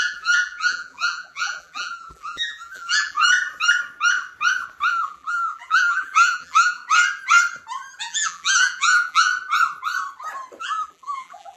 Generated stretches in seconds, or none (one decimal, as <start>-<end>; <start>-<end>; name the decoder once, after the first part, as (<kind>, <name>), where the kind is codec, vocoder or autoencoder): 0.0-3.2 (vocoder, BigVGAN v2); 4.9-6.8; 8.0-9.3; 10.6-11.6